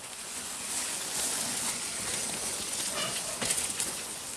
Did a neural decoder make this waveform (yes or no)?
yes